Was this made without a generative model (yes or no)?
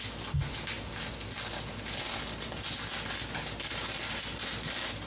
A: yes